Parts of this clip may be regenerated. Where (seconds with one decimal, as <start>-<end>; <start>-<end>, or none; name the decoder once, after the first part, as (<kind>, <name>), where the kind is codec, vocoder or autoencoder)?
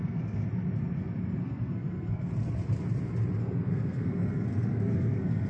0.0-0.4 (codec, SNAC); 1.4-2.3; 3.4-5.5